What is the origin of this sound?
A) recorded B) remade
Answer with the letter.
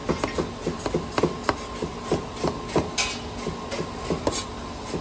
A